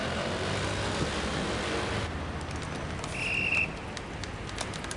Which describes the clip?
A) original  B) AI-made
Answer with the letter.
A